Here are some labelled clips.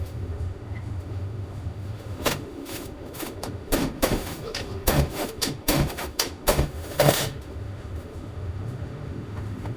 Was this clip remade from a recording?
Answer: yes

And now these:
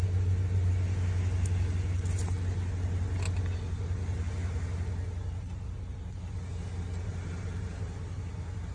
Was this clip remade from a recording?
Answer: no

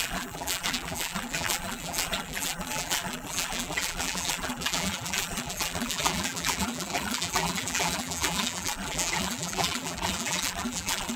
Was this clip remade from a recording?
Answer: yes